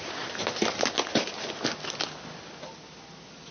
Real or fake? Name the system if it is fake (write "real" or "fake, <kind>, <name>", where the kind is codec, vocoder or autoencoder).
real